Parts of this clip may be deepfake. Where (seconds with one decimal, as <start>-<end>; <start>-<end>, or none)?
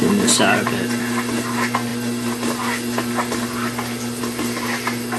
none